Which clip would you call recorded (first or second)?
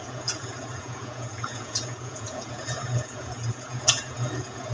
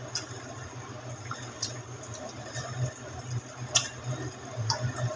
second